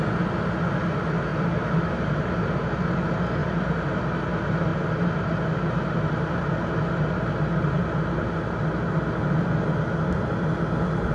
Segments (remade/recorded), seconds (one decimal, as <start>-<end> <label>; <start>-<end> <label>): 0.0-1.3 recorded; 1.3-2.5 remade; 2.5-3.4 recorded; 3.4-4.0 remade; 4.0-4.7 recorded; 4.7-5.9 remade; 5.9-11.1 recorded